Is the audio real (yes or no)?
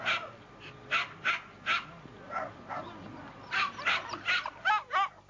yes